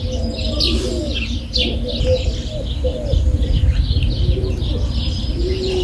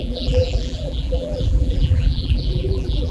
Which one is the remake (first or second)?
second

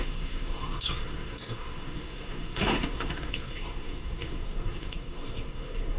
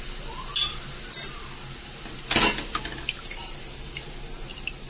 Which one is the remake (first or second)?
first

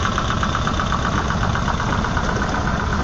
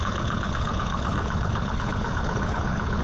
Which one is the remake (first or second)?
second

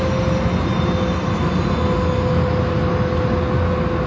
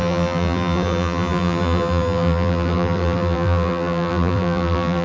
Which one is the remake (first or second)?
second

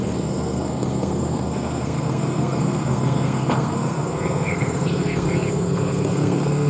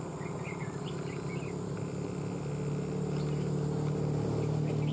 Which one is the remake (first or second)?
first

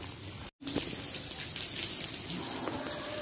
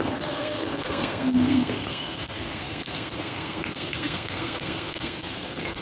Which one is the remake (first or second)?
second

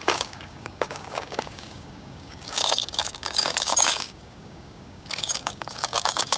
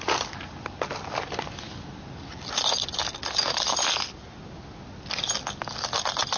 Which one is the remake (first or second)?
first